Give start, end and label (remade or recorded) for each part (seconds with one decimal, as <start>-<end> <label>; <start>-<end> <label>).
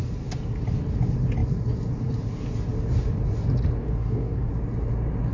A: 0.0-3.8 recorded; 3.8-4.5 remade; 4.5-5.3 recorded